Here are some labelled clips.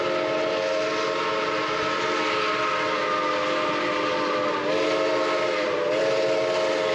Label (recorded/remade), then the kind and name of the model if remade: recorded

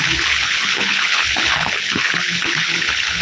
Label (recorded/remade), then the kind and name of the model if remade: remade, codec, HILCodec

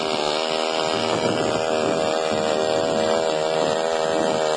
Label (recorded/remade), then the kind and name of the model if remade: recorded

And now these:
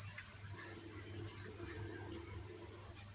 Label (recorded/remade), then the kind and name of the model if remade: recorded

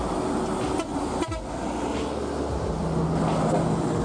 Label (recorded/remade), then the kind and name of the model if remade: recorded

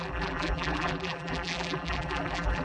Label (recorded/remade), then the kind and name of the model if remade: remade, vocoder, BigVGAN v2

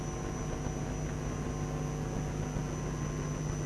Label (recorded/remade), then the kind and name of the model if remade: recorded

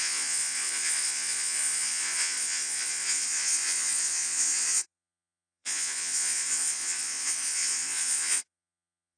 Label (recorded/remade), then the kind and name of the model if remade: remade, vocoder, Vocos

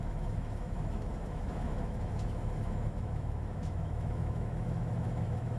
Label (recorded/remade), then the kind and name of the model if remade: remade, autoencoder, DAC-VAE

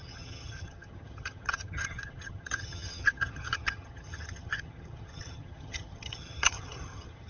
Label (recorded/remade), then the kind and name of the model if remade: remade, vocoder, HiFi-GAN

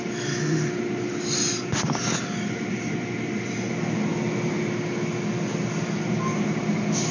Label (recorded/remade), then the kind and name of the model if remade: recorded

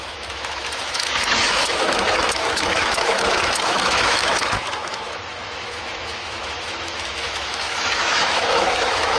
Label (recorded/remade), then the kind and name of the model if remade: remade, autoencoder, DAC-VAE